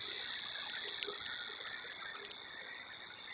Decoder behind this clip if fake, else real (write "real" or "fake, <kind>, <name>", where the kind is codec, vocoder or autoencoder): real